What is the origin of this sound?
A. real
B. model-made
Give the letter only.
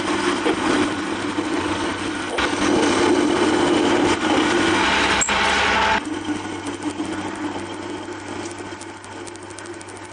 A